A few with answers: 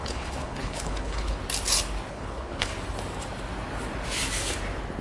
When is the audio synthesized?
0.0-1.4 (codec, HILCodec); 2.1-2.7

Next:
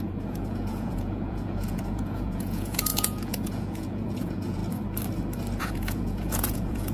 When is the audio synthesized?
0.0-4.6 (vocoder, Vocos); 5.6-6.9

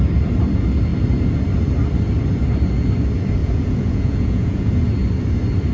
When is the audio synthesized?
3.4-4.7 (vocoder, Vocos)

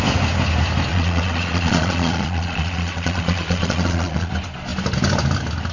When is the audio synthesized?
0.9-4.3 (vocoder, Vocos)

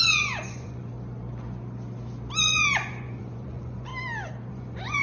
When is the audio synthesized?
0.0-0.9 (vocoder, Vocos); 2.4-3.9; 4.5-5.0

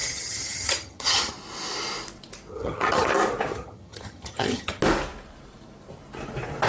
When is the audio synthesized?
0.0-1.3 (vocoder, HiFi-GAN); 2.5-3.1; 3.5-4.8